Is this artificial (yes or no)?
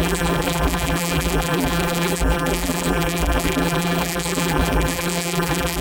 yes